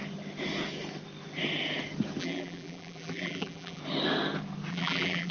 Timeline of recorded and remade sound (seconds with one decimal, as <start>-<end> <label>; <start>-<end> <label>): 0.0-2.2 recorded; 2.2-3.8 remade; 3.8-4.7 recorded; 4.7-5.3 remade